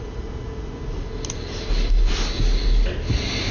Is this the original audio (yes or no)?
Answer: yes